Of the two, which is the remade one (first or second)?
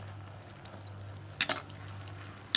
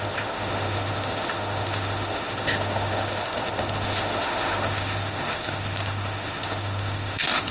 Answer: second